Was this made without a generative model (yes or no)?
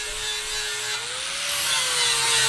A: yes